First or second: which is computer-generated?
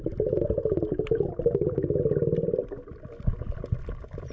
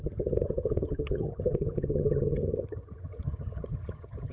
second